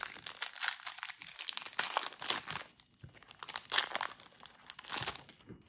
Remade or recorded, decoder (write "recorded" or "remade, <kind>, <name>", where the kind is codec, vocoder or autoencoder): recorded